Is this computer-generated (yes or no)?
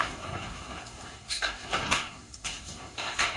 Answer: yes